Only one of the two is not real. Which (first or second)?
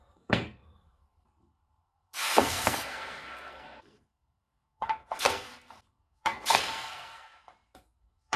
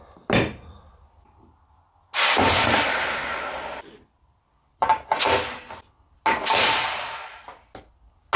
first